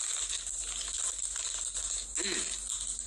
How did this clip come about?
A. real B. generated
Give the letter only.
A